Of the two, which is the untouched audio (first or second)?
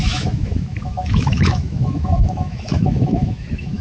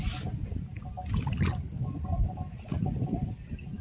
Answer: second